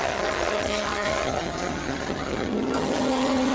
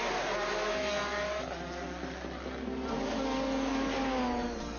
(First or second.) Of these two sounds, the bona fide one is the second